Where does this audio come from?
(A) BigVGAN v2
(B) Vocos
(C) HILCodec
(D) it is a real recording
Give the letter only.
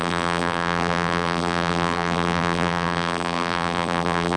A